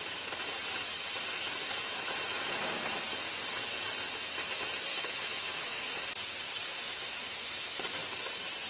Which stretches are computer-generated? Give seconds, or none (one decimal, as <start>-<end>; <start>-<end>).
4.9-6.0; 6.5-7.8